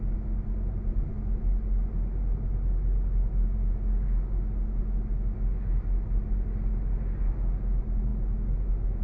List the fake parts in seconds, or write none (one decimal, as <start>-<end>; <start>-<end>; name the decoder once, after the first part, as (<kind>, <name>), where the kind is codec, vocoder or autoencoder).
none